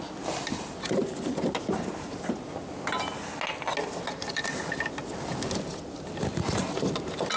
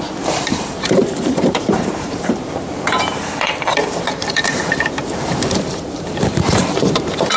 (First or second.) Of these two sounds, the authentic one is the first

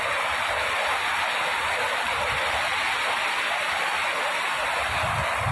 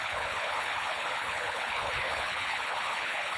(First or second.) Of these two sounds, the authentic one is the first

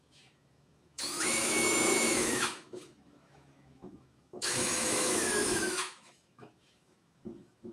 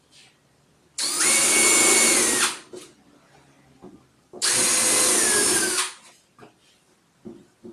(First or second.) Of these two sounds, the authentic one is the second